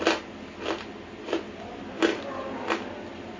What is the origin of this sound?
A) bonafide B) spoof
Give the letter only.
A